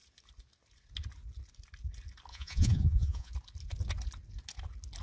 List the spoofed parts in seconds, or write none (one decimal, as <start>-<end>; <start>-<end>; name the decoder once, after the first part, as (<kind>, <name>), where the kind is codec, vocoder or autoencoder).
2.3-3.3 (vocoder, Vocos)